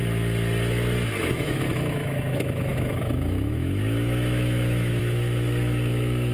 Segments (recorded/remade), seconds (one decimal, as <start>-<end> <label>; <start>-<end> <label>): 0.0-1.2 recorded; 1.2-6.3 remade